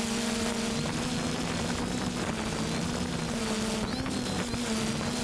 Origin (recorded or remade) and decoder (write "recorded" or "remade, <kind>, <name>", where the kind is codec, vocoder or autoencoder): recorded